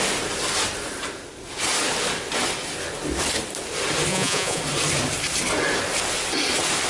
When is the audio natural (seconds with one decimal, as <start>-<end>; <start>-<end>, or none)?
0.0-4.1; 4.6-6.9

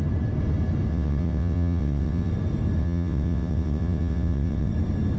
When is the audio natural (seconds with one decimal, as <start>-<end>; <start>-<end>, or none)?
0.0-0.9; 2.3-2.8; 4.7-5.2

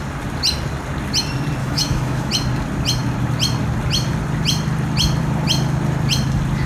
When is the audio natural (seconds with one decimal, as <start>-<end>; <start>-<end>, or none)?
0.0-1.6; 2.3-6.7

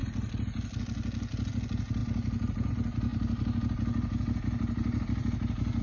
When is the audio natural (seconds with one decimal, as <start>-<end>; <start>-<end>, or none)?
0.0-5.8

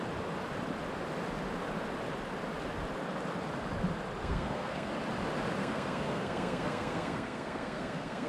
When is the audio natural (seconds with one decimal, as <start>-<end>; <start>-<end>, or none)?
0.0-4.2; 4.9-5.6